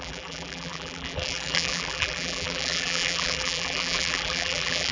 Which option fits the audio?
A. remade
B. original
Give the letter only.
A